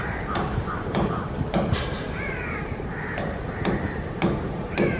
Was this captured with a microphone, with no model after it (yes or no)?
no